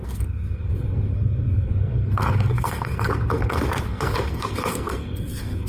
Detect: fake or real fake